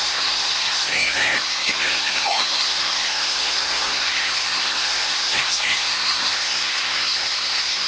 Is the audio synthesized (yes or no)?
yes